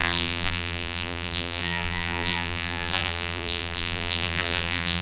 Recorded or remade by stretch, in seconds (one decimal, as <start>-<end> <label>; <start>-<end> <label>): 0.0-5.0 remade

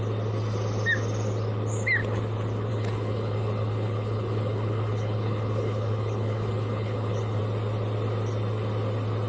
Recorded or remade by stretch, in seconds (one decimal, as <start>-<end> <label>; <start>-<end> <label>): 0.0-2.7 recorded; 2.7-7.4 remade; 7.4-9.3 recorded

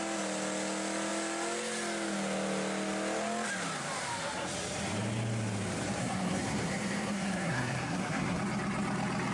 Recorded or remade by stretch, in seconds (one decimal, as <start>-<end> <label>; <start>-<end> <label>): 0.0-6.0 recorded; 6.0-8.4 remade; 8.4-9.3 recorded

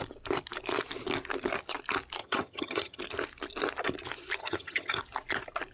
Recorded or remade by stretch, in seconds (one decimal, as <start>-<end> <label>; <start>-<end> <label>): 0.0-2.2 recorded; 2.2-3.0 remade; 3.0-4.4 recorded; 4.4-5.0 remade; 5.0-5.7 recorded

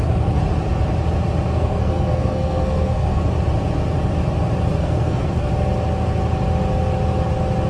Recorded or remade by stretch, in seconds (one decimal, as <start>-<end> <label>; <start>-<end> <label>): 0.0-1.5 recorded; 1.5-3.2 remade; 3.2-4.7 recorded; 4.7-5.5 remade; 5.5-7.7 recorded